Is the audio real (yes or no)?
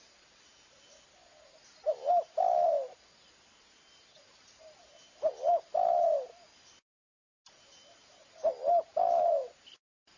yes